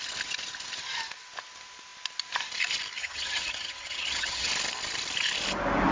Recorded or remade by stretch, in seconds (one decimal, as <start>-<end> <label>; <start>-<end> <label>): 0.0-3.0 recorded; 3.0-4.5 remade; 4.5-5.9 recorded